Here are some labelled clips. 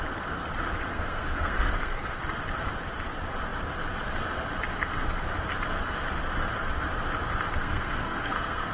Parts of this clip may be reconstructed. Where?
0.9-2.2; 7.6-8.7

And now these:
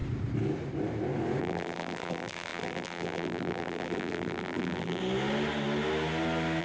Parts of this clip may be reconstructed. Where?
1.4-5.0

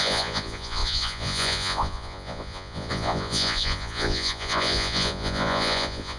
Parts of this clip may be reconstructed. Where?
0.0-6.2